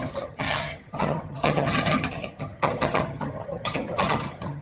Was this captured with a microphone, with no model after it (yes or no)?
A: no